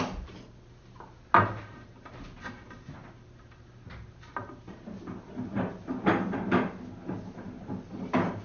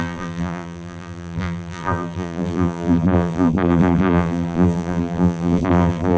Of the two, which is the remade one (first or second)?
second